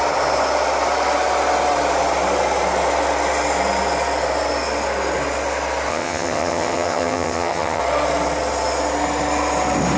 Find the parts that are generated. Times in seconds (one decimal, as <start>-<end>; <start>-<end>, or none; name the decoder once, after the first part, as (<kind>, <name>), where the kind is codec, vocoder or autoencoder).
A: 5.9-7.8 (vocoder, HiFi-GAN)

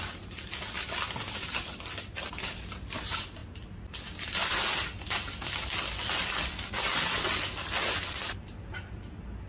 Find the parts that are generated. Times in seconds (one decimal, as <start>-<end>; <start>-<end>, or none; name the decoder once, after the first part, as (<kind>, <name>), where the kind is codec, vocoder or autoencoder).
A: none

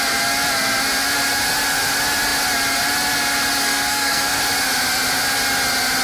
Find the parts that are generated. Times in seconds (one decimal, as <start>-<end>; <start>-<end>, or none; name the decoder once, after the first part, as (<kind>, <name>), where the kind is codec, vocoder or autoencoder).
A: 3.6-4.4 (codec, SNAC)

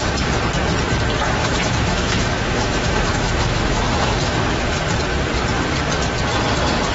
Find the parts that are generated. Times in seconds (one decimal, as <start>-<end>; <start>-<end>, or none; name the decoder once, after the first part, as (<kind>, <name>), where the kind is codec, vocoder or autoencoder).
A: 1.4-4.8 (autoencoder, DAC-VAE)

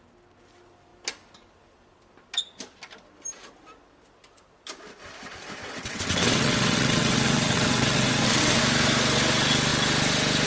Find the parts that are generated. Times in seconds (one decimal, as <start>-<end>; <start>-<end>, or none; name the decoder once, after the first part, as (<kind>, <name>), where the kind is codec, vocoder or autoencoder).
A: 5.6-8.6 (vocoder, WaveNeXt)

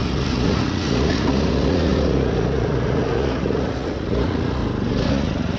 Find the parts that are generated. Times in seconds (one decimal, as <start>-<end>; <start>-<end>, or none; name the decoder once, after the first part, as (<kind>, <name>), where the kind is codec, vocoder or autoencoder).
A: 0.0-4.6 (vocoder, Vocos); 5.1-5.6

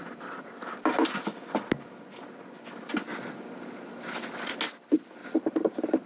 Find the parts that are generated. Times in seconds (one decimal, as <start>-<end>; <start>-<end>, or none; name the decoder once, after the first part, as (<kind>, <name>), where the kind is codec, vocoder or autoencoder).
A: 5.2-6.1 (vocoder, BigVGAN v2)

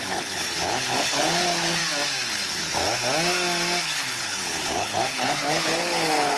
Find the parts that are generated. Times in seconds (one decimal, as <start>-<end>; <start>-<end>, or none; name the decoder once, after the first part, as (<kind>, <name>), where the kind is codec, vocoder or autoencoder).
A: 0.0-1.8 (codec, HILCodec); 2.3-2.8; 3.8-6.4